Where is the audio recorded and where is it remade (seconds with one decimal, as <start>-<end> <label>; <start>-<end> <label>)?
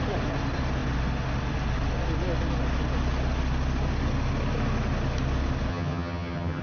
0.0-5.7 recorded; 5.7-6.6 remade